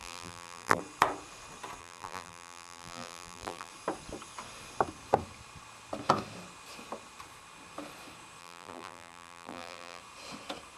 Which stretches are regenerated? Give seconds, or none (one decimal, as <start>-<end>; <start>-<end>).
0.0-0.8; 1.8-3.7; 8.4-10.0